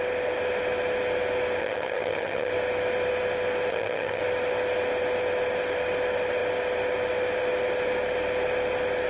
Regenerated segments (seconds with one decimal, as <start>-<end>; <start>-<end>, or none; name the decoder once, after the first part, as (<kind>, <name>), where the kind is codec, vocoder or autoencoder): 1.6-2.5 (vocoder, HiFi-GAN); 3.7-4.2